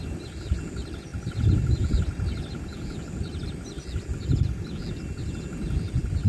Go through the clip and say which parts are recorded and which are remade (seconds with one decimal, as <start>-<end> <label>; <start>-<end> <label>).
0.0-6.3 recorded